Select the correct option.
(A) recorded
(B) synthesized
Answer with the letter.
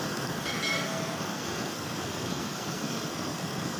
B